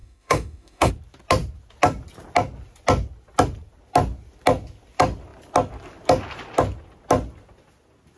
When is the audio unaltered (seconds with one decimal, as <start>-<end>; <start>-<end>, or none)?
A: 0.9-8.2